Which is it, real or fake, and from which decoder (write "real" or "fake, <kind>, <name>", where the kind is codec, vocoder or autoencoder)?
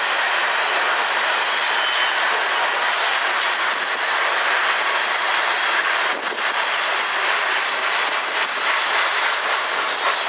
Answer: real